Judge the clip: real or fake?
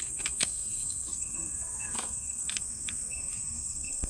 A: fake